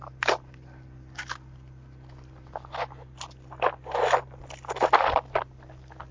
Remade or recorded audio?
recorded